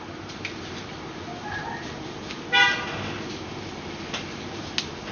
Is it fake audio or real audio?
real